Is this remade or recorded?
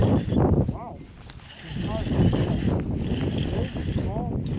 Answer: recorded